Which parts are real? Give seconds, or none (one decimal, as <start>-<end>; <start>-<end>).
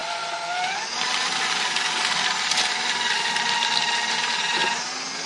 3.2-5.3